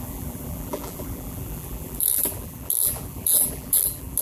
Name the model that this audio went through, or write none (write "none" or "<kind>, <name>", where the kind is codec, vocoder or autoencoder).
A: vocoder, BigVGAN v2